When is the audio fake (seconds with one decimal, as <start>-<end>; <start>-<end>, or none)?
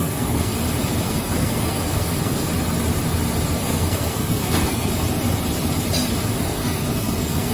0.0-0.5; 1.0-2.5; 3.5-4.9; 6.1-7.5